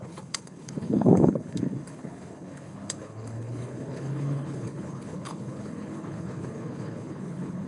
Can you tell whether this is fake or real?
fake